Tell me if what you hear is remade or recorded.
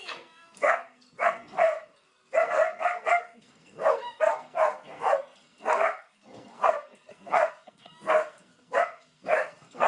remade